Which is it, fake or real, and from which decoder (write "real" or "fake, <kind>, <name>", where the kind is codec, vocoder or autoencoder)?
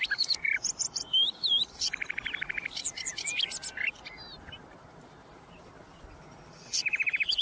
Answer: real